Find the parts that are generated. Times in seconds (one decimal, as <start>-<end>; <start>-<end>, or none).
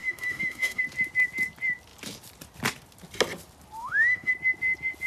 0.0-0.8; 3.8-4.3